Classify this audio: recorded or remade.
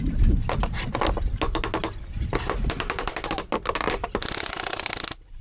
recorded